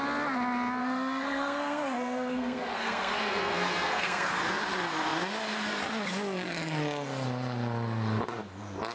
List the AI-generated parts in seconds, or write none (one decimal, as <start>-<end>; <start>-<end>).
0.8-4.4